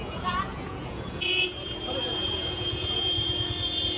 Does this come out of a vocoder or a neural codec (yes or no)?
yes